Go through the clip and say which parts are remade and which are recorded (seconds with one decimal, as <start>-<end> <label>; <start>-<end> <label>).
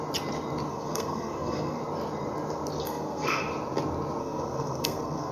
0.0-0.7 recorded; 0.7-1.8 remade; 1.8-2.8 recorded; 2.8-3.4 remade; 3.4-4.2 recorded; 4.2-5.3 remade